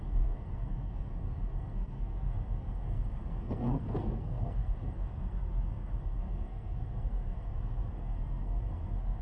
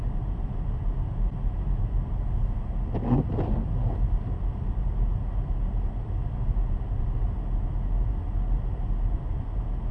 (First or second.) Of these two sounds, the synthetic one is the first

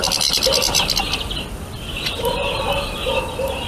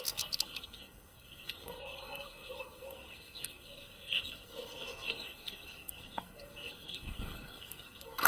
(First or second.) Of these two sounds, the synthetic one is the second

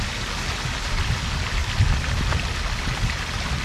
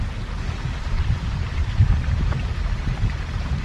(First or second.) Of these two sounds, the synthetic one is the second